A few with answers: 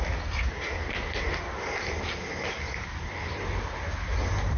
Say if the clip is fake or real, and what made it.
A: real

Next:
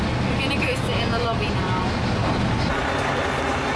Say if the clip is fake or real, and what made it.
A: real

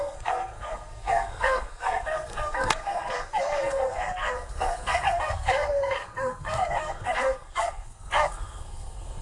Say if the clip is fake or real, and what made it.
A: fake, codec, SNAC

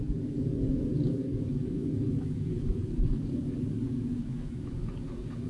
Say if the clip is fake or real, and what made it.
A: fake, codec, DAC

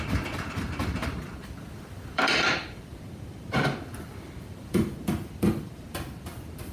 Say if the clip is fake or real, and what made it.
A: fake, vocoder, BigVGAN v2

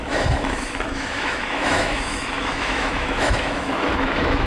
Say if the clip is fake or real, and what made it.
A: fake, autoencoder, DAC-VAE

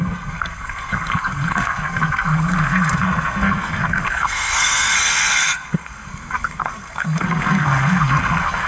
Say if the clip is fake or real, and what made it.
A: fake, codec, SNAC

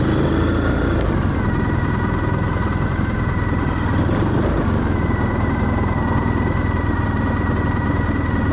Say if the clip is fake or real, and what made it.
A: real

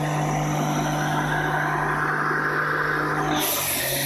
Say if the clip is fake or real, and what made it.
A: real